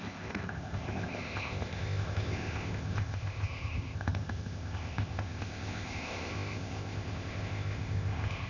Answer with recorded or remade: remade